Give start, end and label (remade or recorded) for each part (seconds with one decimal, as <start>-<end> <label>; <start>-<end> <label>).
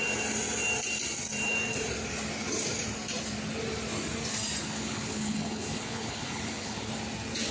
0.0-4.6 recorded; 4.6-6.9 remade; 6.9-7.5 recorded